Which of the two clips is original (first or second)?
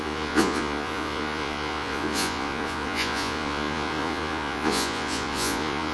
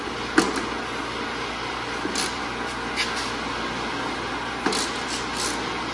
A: second